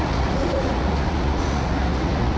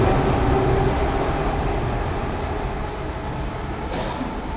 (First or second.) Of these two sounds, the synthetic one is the first